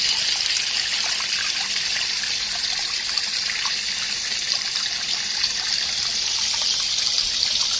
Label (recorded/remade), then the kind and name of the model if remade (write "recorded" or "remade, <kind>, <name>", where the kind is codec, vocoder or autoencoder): recorded